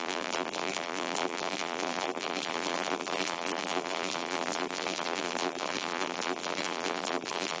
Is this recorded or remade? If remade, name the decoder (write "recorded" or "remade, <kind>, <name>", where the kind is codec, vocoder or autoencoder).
remade, vocoder, BigVGAN v2